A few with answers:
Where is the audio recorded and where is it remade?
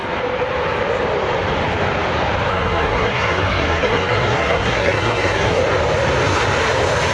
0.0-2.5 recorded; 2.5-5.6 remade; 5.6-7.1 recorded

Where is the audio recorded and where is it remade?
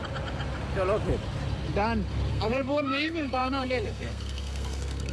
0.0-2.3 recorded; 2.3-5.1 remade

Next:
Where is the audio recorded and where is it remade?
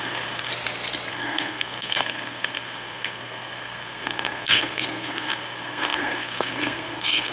0.0-0.5 remade; 0.5-1.1 recorded; 1.1-7.3 remade